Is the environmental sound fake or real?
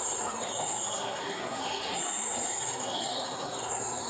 fake